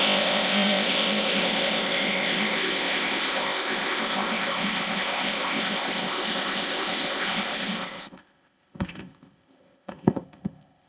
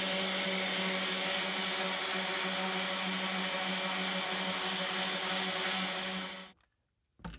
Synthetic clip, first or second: first